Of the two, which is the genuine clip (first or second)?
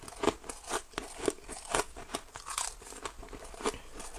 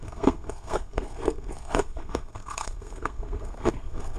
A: first